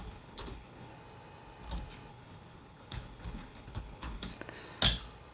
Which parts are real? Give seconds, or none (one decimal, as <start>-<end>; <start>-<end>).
0.9-2.1; 4.3-5.3